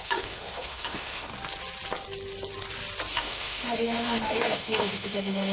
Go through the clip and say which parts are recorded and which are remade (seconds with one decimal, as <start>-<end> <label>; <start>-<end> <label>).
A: 0.0-1.3 remade; 1.3-3.1 recorded; 3.1-5.5 remade